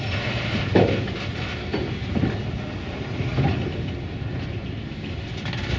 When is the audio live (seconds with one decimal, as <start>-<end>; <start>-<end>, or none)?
0.0-5.8

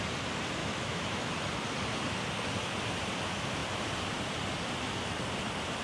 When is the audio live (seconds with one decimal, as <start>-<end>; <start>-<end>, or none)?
0.0-0.6; 1.3-5.8

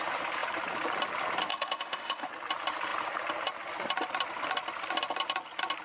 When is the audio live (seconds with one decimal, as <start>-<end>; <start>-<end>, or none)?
0.0-1.5; 2.3-5.8